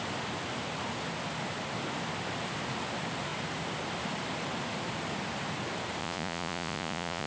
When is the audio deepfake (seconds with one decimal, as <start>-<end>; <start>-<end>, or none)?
6.0-7.3